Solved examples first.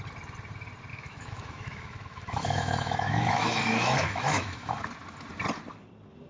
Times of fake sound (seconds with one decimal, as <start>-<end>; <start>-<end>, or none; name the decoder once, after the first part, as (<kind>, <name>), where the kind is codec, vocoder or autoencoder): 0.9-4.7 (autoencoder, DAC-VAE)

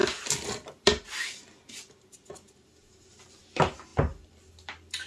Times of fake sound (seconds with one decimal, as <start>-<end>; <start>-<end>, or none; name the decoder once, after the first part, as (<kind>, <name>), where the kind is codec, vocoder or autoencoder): none

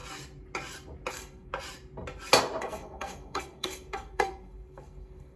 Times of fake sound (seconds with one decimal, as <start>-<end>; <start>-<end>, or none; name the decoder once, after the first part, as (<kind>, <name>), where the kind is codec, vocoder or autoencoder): 1.1-1.5 (codec, SNAC); 2.6-5.4

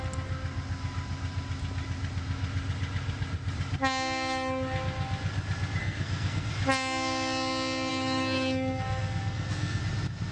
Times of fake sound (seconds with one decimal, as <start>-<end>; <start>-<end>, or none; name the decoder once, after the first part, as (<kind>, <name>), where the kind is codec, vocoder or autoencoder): 5.8-6.5 (codec, SNAC); 7.9-9.8

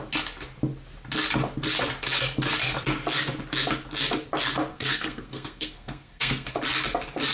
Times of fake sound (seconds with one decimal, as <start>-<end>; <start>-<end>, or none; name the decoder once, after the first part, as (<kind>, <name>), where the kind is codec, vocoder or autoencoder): 4.7-6.5 (codec, SNAC)

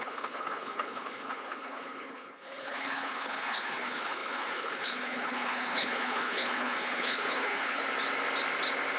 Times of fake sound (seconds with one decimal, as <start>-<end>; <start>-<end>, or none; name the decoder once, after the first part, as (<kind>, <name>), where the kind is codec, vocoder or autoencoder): 0.0-7.8 (codec, HILCodec)